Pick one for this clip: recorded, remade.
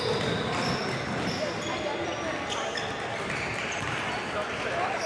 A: recorded